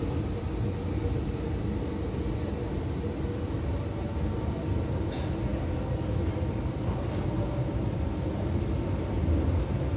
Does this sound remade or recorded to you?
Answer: recorded